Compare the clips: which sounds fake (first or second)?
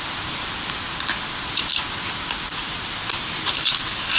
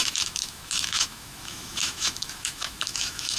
second